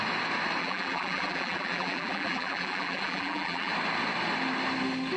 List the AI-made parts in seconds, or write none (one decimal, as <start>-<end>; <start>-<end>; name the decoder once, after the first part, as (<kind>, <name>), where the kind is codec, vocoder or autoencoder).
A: 0.6-3.7 (vocoder, BigVGAN v2)